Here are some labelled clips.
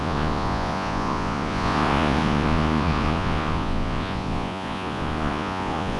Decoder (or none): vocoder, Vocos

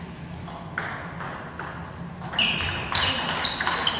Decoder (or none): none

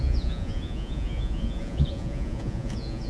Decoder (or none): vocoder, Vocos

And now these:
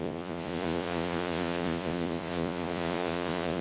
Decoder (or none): vocoder, Vocos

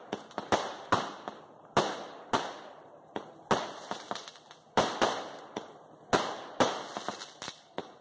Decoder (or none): none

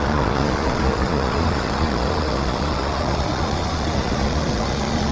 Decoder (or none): vocoder, Vocos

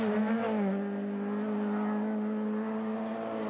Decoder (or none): none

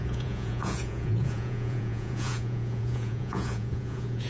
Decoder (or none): vocoder, Vocos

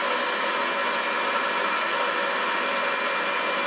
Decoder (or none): none